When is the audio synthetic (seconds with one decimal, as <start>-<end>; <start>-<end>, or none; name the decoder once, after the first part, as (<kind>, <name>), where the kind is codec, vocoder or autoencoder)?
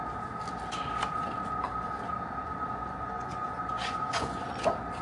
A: 2.4-4.6 (vocoder, Vocos)